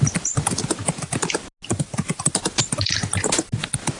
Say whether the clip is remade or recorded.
recorded